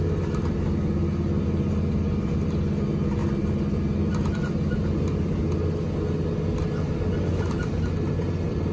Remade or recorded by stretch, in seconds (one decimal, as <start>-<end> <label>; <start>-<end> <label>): 0.0-8.7 recorded